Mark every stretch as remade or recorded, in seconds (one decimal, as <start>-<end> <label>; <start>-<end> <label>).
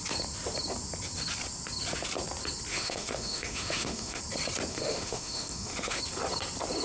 0.0-2.7 recorded; 2.7-4.2 remade; 4.2-4.7 recorded; 4.7-6.0 remade; 6.0-6.8 recorded